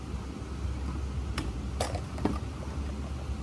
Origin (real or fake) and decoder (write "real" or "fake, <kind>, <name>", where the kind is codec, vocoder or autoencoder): real